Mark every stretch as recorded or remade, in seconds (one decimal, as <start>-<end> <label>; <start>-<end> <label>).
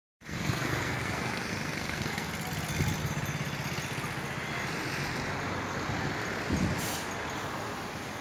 0.0-2.3 remade; 2.3-8.2 recorded